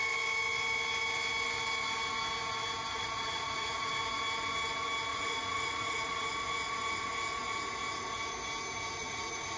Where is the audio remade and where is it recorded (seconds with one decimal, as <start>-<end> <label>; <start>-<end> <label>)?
0.0-2.9 recorded; 2.9-3.9 remade; 3.9-5.1 recorded; 5.1-6.3 remade; 6.3-9.0 recorded; 9.0-9.6 remade